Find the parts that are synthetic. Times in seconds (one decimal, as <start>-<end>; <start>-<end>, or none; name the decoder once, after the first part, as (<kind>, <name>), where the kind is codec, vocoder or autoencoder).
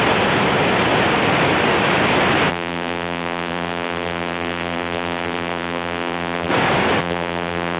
2.5-6.5 (vocoder, BigVGAN v2); 7.0-7.8